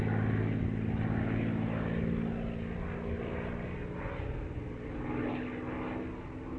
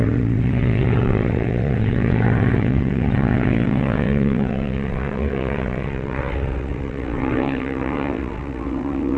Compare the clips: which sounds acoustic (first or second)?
first